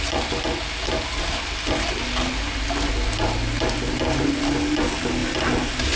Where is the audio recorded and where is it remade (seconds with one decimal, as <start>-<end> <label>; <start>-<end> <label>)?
0.0-6.0 recorded